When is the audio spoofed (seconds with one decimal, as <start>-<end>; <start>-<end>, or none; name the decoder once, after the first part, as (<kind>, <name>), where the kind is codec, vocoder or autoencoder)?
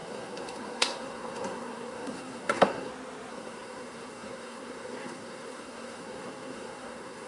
0.0-2.9 (codec, SNAC); 3.3-7.3